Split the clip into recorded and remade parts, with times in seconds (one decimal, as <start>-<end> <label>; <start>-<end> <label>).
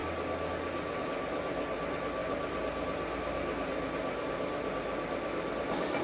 0.0-6.0 recorded